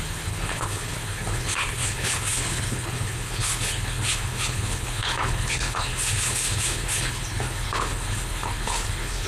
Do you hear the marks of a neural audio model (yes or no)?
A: yes